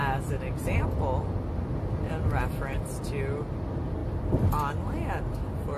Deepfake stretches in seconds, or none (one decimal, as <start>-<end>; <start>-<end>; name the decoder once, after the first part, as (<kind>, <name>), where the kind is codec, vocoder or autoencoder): none